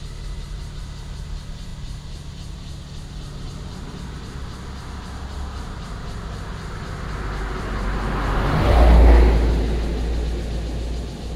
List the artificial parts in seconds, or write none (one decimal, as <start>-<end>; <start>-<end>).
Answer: none

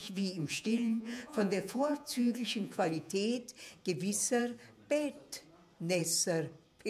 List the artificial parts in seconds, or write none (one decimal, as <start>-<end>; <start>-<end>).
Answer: 0.0-3.1